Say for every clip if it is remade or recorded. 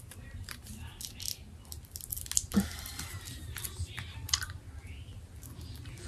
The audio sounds recorded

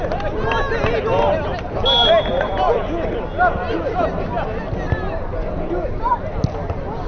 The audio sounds recorded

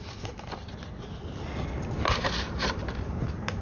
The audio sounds recorded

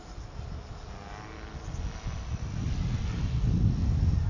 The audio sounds recorded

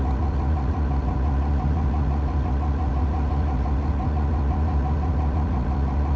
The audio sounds remade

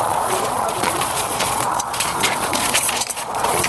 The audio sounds remade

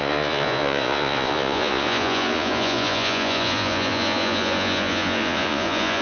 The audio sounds remade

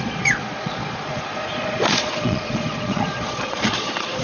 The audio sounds remade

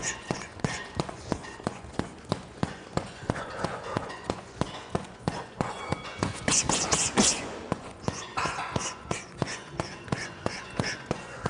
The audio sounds remade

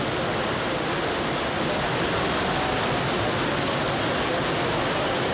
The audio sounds recorded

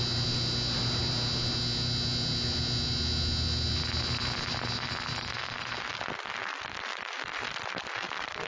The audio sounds recorded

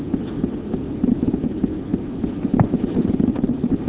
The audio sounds recorded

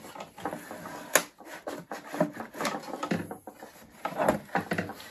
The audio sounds recorded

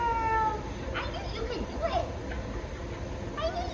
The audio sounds recorded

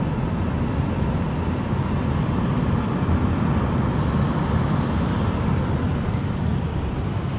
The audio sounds recorded